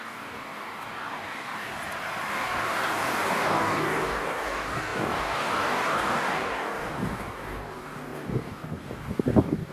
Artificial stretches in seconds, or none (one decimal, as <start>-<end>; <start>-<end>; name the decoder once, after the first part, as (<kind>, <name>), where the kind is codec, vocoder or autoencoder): 0.0-1.7 (codec, DAC); 2.3-9.7